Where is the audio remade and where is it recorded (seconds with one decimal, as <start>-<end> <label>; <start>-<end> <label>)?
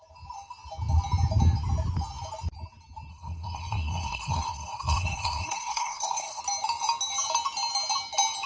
0.0-3.1 recorded; 3.1-6.4 remade; 6.4-8.5 recorded